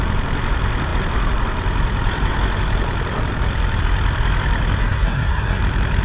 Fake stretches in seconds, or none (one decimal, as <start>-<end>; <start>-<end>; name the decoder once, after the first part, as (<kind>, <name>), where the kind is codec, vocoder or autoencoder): 4.8-5.6 (codec, SNAC)